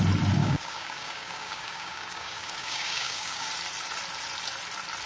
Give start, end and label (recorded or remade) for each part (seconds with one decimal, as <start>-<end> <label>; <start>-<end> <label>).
0.0-0.4 recorded; 0.4-3.5 remade; 3.5-5.1 recorded